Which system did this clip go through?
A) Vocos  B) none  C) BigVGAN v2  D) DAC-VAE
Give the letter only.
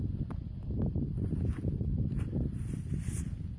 B